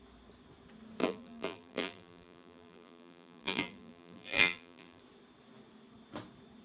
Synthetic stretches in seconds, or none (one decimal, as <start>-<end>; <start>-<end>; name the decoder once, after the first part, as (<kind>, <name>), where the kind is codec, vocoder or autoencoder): 1.0-5.0 (vocoder, BigVGAN v2)